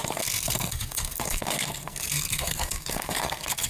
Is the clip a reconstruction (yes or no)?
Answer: yes